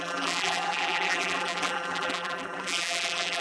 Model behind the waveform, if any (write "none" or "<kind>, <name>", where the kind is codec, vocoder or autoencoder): vocoder, BigVGAN v2